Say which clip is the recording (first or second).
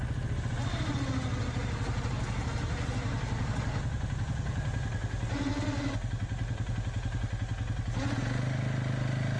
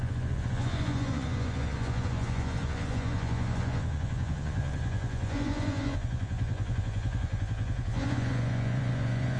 first